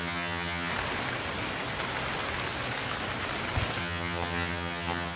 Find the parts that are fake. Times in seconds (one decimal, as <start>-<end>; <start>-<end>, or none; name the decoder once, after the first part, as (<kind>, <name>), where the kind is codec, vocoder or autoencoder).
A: 0.0-0.7 (vocoder, HiFi-GAN); 3.8-5.2